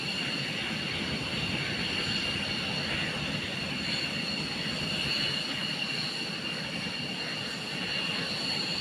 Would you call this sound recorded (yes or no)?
yes